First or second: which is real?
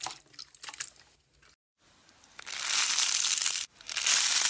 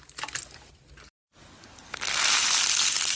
first